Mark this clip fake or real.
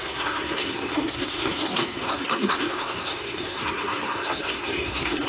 fake